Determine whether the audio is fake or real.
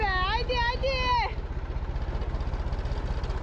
real